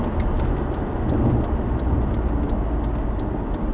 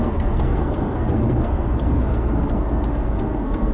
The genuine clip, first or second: first